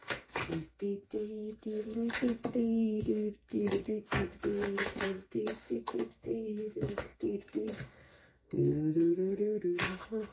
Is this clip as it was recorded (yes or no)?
no